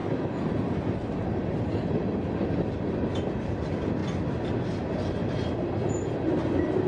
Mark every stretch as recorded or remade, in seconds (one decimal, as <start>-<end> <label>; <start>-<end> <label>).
0.0-6.9 recorded